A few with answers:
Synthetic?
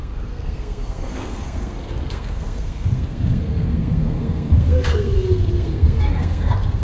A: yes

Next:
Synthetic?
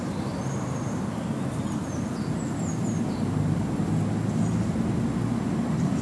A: no